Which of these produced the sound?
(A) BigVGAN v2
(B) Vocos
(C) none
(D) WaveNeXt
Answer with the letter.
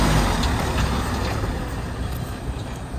C